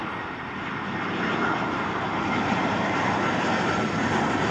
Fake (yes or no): yes